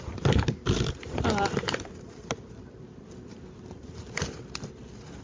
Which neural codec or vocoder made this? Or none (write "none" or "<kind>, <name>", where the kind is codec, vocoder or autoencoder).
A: vocoder, BigVGAN v2